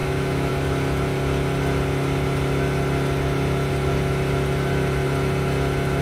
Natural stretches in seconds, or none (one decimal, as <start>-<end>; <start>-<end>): 0.5-6.0